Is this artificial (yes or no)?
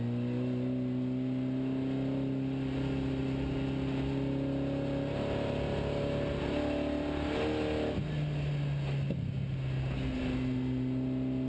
no